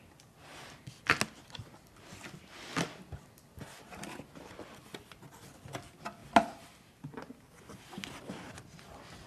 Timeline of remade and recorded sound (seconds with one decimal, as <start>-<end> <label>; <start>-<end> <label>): 0.0-9.3 recorded